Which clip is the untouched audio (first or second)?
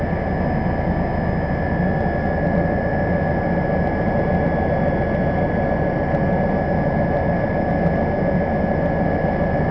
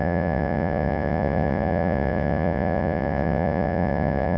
first